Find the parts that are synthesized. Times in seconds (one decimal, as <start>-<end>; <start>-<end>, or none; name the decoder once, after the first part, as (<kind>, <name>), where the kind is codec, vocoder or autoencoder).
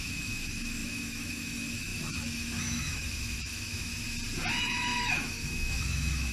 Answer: 0.0-3.9 (autoencoder, DAC-VAE); 4.5-6.3